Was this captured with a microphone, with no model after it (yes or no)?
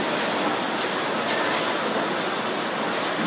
yes